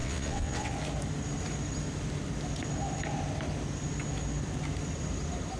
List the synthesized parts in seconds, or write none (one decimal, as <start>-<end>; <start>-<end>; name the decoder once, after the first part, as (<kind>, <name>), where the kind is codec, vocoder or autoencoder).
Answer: 0.0-0.7 (vocoder, WaveNeXt)